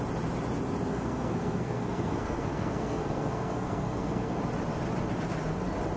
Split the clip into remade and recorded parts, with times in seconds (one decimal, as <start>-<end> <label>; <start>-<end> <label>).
0.0-0.9 recorded; 0.9-4.4 remade; 4.4-6.0 recorded